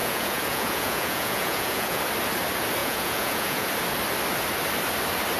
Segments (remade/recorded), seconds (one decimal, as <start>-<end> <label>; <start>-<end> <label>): 0.0-2.0 remade; 2.0-2.8 recorded; 2.8-3.7 remade; 3.7-5.4 recorded